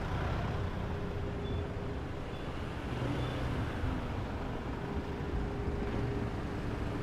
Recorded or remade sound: recorded